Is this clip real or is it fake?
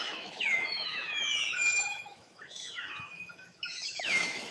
fake